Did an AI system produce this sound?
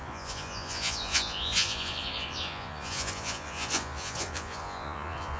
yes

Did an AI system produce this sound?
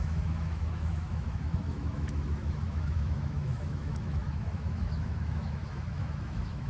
yes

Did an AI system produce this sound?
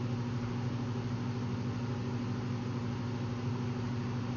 no